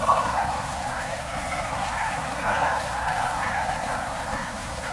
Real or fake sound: fake